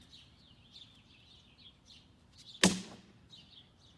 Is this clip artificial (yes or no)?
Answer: no